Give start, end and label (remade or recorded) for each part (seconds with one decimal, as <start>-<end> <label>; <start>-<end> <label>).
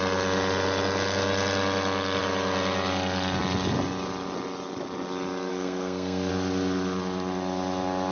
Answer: 0.0-5.5 recorded; 5.5-6.3 remade; 6.3-8.1 recorded